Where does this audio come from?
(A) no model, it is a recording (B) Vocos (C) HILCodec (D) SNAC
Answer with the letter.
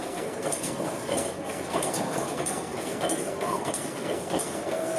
D